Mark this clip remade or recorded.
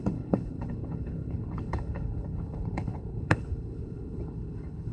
remade